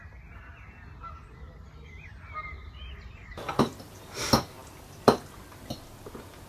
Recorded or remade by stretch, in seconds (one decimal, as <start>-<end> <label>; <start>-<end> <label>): 0.0-2.6 recorded; 2.6-3.3 remade; 3.3-3.7 recorded; 3.7-5.0 remade; 5.0-6.5 recorded